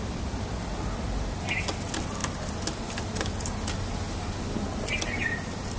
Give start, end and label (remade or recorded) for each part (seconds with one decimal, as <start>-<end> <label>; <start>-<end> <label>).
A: 0.0-5.8 recorded

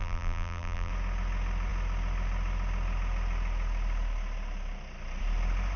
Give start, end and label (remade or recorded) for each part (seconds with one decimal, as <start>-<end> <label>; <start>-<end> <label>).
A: 0.0-0.9 remade; 0.9-5.8 recorded

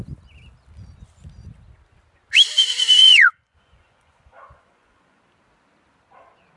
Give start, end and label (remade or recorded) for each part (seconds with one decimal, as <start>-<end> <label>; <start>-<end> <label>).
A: 0.0-3.0 recorded; 3.0-5.2 remade; 5.2-6.6 recorded

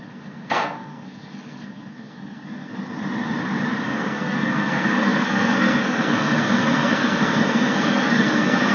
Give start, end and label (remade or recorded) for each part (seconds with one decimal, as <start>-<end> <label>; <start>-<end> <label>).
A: 0.0-2.7 remade; 2.7-3.8 recorded; 3.8-8.7 remade